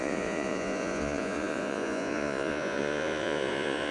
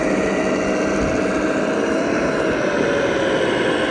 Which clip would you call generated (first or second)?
first